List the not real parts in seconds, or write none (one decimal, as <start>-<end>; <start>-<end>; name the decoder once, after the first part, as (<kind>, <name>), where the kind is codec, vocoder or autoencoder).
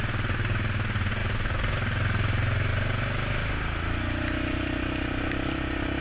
1.2-1.8 (vocoder, BigVGAN v2)